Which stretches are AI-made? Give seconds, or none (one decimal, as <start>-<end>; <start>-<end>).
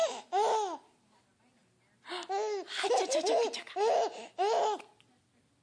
none